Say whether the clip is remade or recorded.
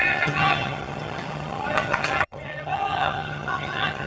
remade